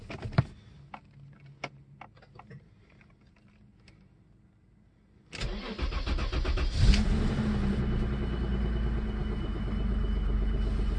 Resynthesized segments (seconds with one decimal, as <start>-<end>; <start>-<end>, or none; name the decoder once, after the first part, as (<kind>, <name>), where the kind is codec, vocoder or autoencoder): none